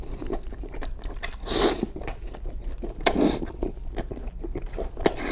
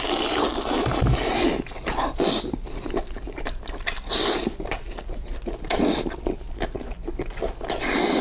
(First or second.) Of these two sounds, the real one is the second